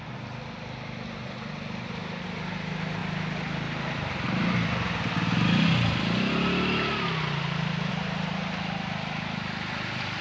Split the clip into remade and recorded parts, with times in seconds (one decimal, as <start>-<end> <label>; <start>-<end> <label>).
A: 0.0-10.2 recorded